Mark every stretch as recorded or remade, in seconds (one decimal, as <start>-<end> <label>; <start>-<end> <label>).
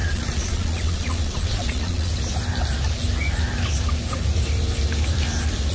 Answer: 0.0-2.1 remade; 2.1-5.7 recorded